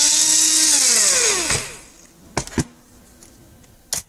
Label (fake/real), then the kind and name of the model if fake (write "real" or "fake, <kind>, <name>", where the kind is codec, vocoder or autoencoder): real